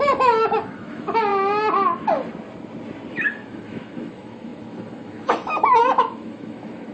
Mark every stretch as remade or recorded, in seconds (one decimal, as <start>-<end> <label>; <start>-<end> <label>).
0.0-1.3 remade; 1.3-3.1 recorded; 3.1-6.9 remade